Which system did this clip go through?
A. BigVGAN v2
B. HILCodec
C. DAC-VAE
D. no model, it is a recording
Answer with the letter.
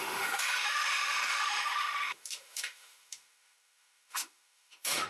C